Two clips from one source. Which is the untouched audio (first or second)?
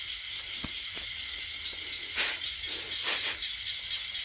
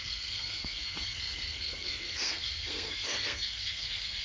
first